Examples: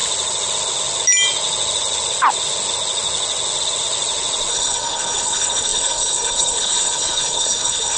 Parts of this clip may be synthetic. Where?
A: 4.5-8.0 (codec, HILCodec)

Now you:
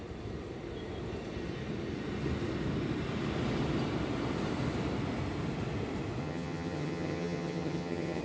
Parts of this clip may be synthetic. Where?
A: 6.2-8.2 (vocoder, HiFi-GAN)

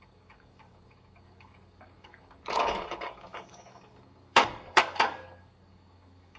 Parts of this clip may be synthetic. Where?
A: 0.0-6.4 (codec, DAC)

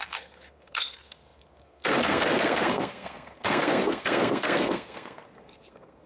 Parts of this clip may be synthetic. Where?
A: 0.0-6.1 (codec, SNAC)

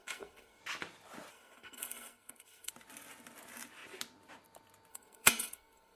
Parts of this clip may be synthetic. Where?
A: 0.0-0.6 (codec, SNAC); 1.3-2.7; 4.9-6.0

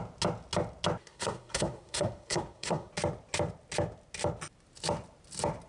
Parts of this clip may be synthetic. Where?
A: 1.0-2.9 (codec, SNAC)

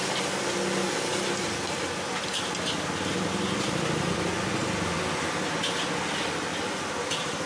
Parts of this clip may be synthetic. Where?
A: 6.5-7.5 (vocoder, BigVGAN v2)